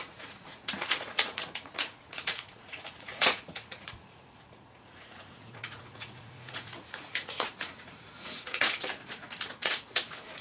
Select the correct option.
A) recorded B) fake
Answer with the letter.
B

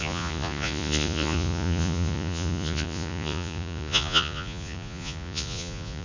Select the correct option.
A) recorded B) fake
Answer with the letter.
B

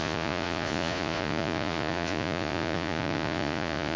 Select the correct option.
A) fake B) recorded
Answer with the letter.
A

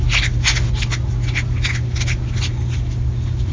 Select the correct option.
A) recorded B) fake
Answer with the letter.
A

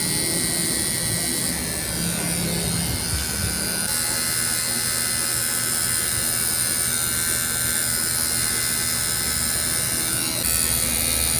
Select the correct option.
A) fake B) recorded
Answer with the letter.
B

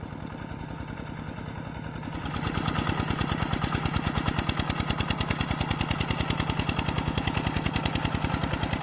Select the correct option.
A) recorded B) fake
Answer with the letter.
A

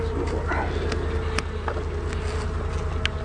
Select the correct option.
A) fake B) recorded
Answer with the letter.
B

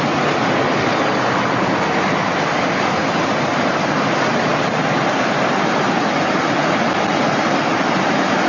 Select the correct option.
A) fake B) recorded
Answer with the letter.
B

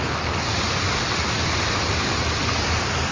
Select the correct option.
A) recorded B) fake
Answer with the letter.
A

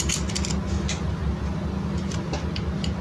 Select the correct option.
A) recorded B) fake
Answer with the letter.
A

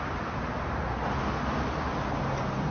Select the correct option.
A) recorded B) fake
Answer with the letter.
A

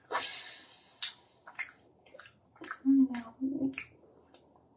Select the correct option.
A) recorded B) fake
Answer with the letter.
A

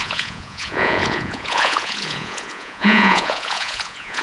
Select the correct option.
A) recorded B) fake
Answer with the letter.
B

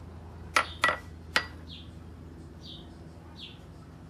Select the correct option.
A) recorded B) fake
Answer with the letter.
A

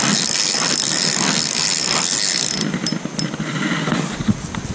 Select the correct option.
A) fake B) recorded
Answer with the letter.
B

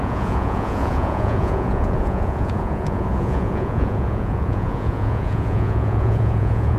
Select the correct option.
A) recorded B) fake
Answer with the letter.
B